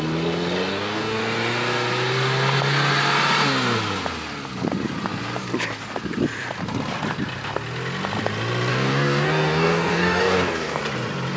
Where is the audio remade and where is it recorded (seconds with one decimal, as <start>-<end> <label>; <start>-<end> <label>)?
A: 0.0-0.7 recorded; 0.7-1.2 remade; 1.2-8.7 recorded; 8.7-10.8 remade; 10.8-11.4 recorded